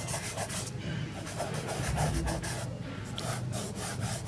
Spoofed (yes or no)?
no